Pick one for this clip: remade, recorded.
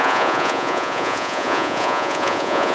remade